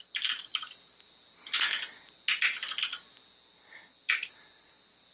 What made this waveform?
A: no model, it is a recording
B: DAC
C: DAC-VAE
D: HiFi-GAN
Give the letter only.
A